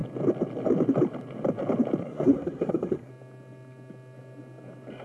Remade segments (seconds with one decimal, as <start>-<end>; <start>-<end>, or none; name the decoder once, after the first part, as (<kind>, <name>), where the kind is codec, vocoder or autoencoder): 2.0-3.1 (codec, SNAC)